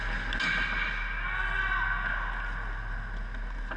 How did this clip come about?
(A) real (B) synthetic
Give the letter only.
A